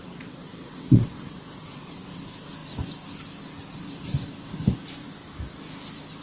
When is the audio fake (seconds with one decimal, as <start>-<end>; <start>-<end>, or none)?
0.0-2.2